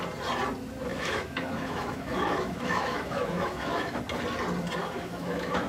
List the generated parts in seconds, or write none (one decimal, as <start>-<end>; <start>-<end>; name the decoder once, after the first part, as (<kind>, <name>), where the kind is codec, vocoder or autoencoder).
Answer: 0.9-4.0 (autoencoder, DAC-VAE); 4.8-5.7

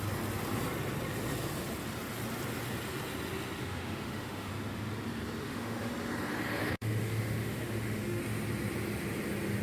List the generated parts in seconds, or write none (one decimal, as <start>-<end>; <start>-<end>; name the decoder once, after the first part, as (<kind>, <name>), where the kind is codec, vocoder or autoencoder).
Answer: 3.6-4.5 (autoencoder, DAC-VAE); 5.4-5.9; 6.6-8.2

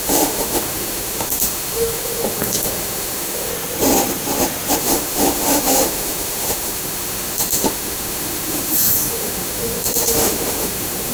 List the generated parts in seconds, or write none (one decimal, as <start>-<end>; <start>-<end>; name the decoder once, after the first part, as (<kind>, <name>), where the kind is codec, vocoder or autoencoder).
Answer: 0.0-3.5 (autoencoder, DAC-VAE); 4.8-11.1